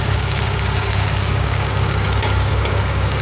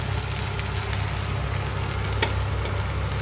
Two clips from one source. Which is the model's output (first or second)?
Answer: first